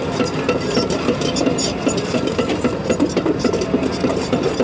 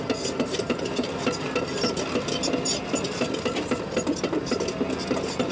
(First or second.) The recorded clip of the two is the second